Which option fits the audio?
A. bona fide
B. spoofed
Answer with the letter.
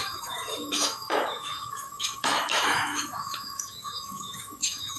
B